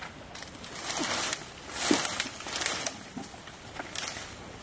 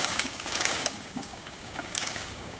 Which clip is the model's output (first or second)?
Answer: second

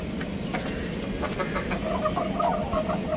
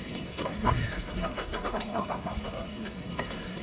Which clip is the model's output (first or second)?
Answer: second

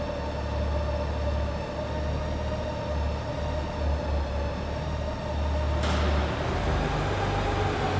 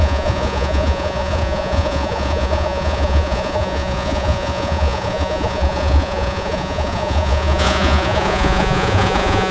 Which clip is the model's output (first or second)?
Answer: second